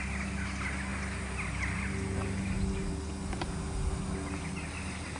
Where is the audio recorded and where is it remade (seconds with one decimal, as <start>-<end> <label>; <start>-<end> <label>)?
0.0-5.2 recorded